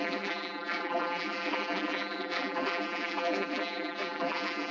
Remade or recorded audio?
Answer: remade